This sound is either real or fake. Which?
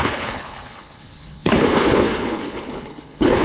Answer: fake